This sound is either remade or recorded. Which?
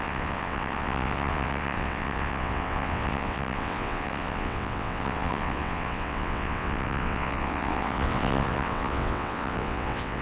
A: remade